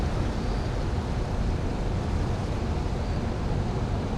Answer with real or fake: real